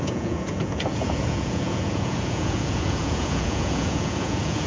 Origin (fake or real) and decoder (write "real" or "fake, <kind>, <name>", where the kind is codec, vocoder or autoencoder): fake, vocoder, Vocos